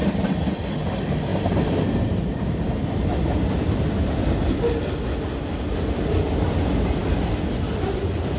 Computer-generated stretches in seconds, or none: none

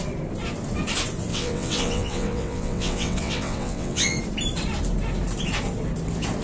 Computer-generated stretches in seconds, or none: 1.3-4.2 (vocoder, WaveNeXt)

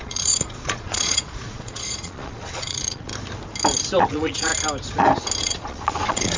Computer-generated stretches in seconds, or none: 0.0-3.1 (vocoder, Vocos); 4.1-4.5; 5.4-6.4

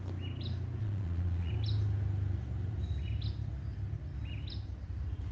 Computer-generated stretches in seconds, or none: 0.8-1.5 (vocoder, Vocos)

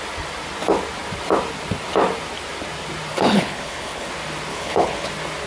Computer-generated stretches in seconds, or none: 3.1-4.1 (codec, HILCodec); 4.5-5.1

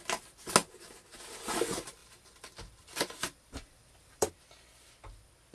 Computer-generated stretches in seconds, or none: 2.0-4.3 (vocoder, BigVGAN v2)

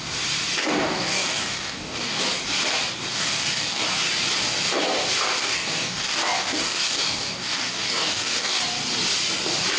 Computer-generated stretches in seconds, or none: 0.6-2.2 (codec, DAC); 3.1-3.8; 5.4-8.6

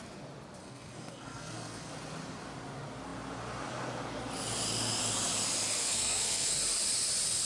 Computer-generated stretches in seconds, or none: 0.6-1.9 (codec, SNAC); 5.8-6.5